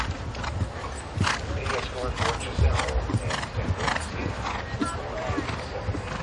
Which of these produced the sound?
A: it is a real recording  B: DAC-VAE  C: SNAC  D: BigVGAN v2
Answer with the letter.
A